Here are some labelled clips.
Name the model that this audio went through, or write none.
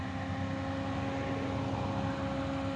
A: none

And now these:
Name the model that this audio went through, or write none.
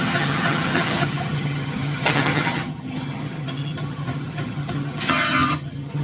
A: vocoder, HiFi-GAN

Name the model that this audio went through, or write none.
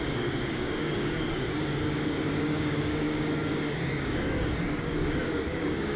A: codec, DAC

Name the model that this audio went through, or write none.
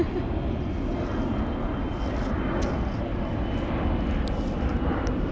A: none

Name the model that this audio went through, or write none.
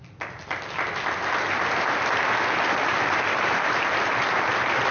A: none